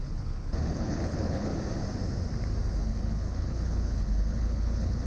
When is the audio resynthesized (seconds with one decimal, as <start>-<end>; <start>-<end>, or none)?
0.0-1.5; 2.8-5.1